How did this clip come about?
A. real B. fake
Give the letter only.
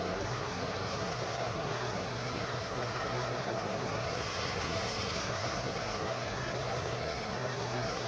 B